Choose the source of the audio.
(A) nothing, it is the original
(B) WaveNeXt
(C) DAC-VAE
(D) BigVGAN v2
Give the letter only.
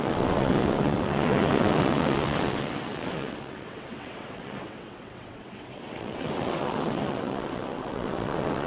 B